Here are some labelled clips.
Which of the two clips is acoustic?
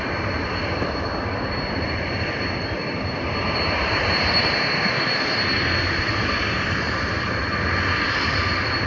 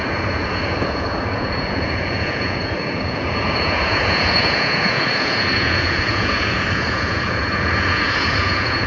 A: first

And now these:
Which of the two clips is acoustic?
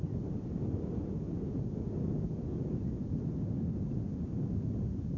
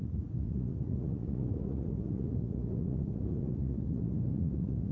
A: first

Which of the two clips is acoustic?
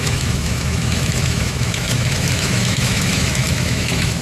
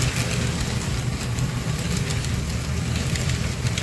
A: second